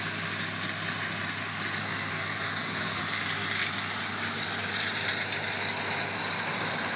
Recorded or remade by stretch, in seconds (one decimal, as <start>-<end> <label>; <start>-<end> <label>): 0.0-1.8 recorded; 1.8-3.0 remade; 3.0-7.0 recorded